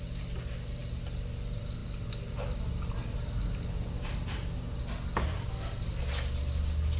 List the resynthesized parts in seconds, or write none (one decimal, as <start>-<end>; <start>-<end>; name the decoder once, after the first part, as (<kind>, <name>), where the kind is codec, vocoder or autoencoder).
none